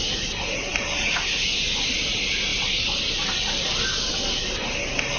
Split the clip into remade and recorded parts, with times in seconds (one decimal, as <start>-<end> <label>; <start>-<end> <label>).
0.0-5.2 recorded